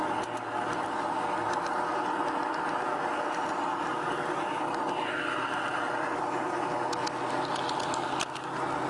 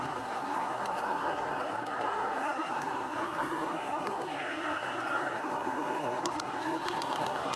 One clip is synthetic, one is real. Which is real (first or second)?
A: first